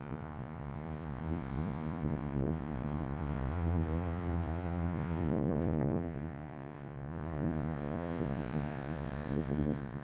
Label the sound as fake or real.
fake